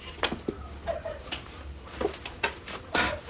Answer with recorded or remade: recorded